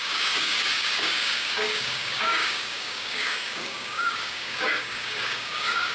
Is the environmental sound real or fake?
fake